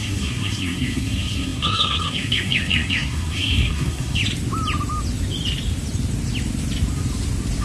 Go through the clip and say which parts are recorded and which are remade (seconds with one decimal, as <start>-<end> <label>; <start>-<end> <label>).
0.0-4.2 remade; 4.2-7.6 recorded